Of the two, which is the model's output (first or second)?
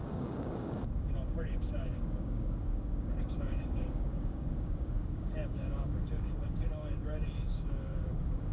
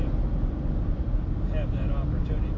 first